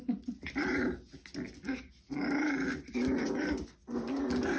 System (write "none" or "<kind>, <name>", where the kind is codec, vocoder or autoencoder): none